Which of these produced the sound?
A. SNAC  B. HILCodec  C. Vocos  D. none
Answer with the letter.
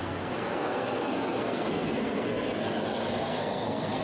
A